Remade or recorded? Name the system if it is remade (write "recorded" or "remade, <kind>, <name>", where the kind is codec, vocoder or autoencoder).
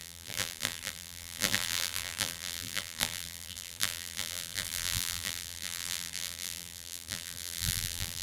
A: remade, vocoder, BigVGAN v2